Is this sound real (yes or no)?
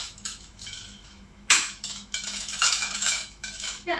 no